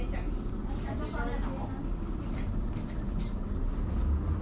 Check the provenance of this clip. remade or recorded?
recorded